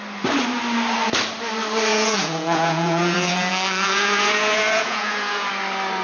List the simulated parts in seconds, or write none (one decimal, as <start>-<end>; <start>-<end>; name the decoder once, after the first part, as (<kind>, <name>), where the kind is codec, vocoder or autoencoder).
1.9-5.5 (vocoder, Vocos)